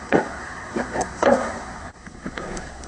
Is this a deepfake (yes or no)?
yes